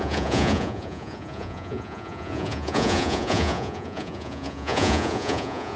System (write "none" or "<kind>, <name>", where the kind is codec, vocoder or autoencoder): vocoder, Vocos